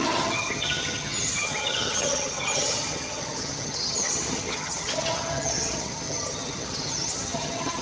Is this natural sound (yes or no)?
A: no